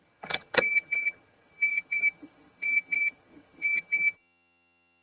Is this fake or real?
fake